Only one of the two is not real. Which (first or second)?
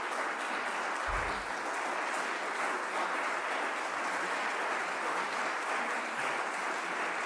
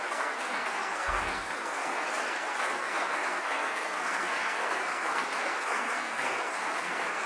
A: second